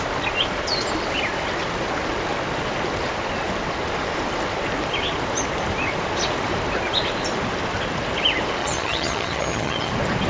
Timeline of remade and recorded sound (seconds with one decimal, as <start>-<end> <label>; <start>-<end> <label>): 0.0-8.6 recorded; 8.6-9.9 remade; 9.9-10.3 recorded

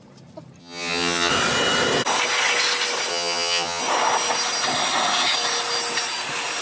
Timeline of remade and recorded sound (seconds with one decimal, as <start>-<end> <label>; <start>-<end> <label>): 0.0-0.6 recorded; 0.6-1.3 remade; 1.3-3.1 recorded; 3.1-3.8 remade; 3.8-6.6 recorded

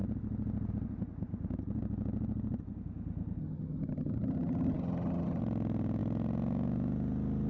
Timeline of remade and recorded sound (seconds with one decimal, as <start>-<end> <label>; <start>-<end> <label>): 0.0-3.4 recorded; 3.4-5.4 remade; 5.4-7.5 recorded

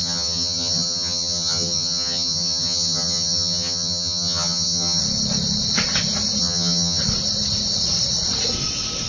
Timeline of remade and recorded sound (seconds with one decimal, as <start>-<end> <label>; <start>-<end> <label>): 0.0-5.0 remade; 5.0-6.4 recorded; 6.4-7.0 remade; 7.0-9.1 recorded

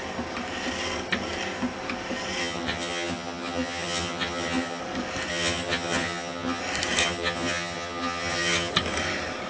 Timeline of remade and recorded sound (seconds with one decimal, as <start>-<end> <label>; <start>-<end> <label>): 0.0-2.4 recorded; 2.4-4.8 remade; 4.8-5.3 recorded; 5.3-6.6 remade; 6.6-7.0 recorded; 7.0-8.7 remade; 8.7-9.5 recorded

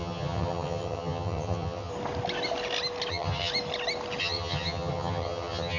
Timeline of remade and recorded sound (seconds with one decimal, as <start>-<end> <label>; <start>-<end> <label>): 0.0-1.9 remade; 1.9-3.1 recorded; 3.1-3.5 remade; 3.5-4.2 recorded; 4.2-5.8 remade

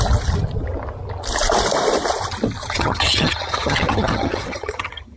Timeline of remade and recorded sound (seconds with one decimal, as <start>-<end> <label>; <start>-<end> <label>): 0.0-2.6 recorded; 2.6-5.2 remade